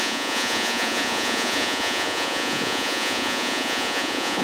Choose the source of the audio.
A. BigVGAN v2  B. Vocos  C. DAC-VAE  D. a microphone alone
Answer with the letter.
B